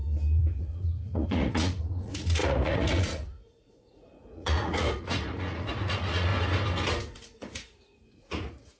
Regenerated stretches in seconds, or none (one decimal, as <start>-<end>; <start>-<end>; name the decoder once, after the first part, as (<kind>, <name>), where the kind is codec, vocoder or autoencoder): 0.6-6.3 (vocoder, Vocos); 6.9-8.8